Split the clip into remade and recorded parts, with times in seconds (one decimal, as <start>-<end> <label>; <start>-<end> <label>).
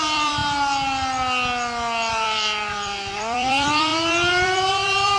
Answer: 0.0-0.4 remade; 0.4-2.1 recorded; 2.1-5.2 remade